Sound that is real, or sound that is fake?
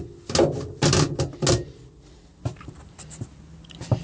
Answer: real